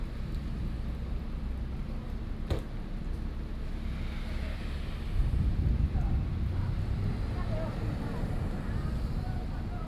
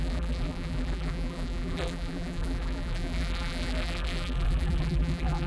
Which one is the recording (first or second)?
first